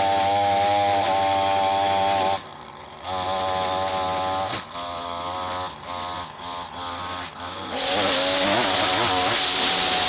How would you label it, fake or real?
real